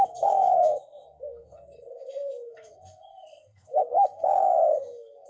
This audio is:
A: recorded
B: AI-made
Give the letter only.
B